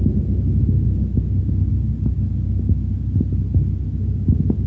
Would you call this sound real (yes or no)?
yes